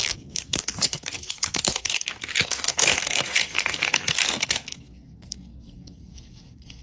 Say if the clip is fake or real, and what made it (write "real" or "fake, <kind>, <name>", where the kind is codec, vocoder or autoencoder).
fake, codec, SNAC